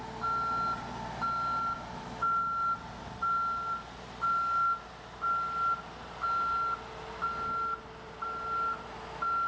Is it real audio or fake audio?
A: real